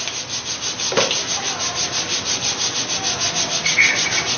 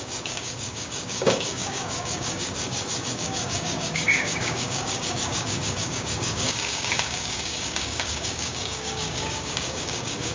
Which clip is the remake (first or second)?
second